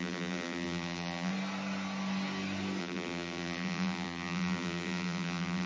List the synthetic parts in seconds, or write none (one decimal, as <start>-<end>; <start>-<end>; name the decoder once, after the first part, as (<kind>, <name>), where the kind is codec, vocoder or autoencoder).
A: 0.0-1.3 (vocoder, BigVGAN v2); 2.8-5.7